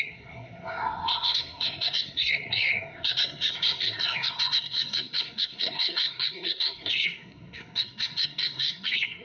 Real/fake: fake